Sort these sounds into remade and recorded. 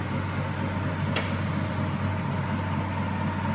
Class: recorded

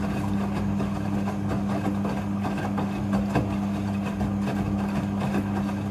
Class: recorded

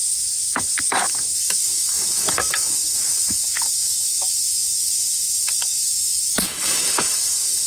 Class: remade